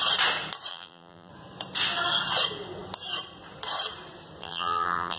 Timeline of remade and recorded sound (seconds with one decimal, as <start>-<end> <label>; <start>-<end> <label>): 0.0-0.7 recorded; 0.7-1.3 remade; 1.3-4.4 recorded; 4.4-5.2 remade